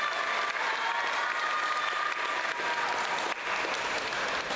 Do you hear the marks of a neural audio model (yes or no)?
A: no